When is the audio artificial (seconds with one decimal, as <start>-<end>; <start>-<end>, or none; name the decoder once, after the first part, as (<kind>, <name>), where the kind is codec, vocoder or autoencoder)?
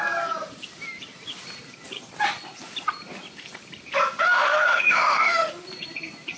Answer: 4.2-5.5 (autoencoder, DAC-VAE)